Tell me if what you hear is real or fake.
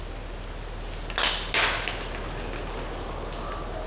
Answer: real